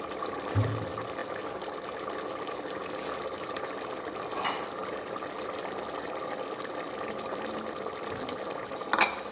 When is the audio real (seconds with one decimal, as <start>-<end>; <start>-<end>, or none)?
0.0-9.3